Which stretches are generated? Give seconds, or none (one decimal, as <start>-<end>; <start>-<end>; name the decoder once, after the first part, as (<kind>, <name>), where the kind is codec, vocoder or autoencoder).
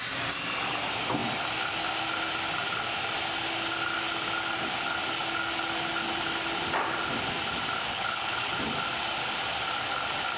7.9-8.5 (codec, HILCodec)